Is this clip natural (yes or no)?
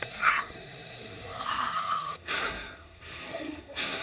no